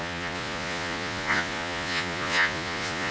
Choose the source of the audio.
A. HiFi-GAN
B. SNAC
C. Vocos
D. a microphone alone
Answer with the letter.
C